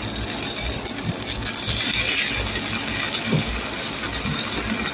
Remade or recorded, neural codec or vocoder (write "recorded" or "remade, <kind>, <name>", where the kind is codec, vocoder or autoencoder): recorded